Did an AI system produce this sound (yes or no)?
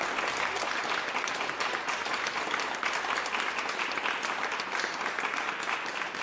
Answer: no